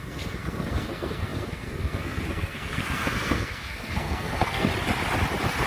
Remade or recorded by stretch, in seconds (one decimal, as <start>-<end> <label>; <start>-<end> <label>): 0.0-4.7 remade; 4.7-5.7 recorded